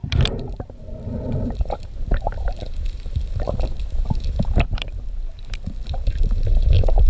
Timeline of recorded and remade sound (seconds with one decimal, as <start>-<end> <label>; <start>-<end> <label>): 0.0-7.1 remade